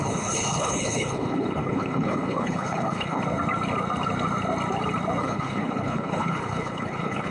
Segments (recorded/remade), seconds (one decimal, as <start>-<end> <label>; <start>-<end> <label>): 0.0-3.2 remade; 3.2-5.2 recorded; 5.2-7.3 remade